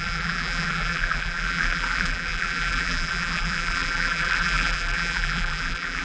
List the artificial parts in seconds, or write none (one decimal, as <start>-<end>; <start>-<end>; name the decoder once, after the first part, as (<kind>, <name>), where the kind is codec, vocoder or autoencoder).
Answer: 0.0-6.0 (vocoder, BigVGAN v2)